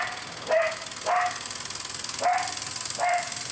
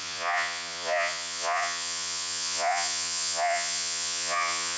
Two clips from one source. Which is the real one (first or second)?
first